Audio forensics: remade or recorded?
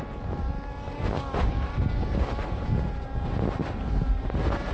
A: recorded